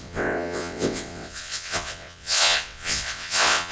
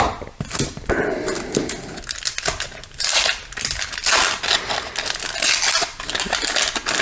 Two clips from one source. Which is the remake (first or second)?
first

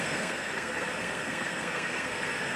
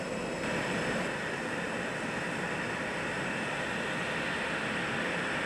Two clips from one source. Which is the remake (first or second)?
first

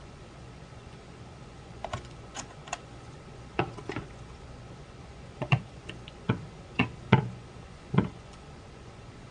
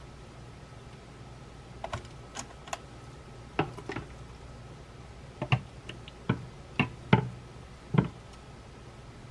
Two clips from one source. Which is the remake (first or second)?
first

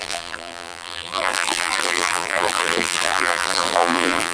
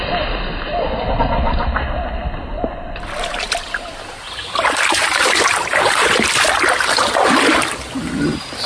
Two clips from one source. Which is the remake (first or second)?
first